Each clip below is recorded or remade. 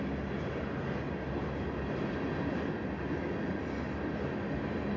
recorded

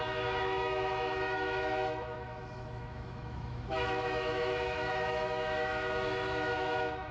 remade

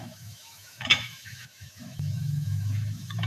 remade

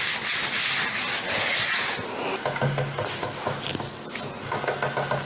recorded